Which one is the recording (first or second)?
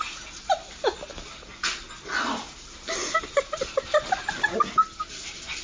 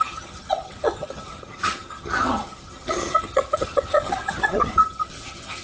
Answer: first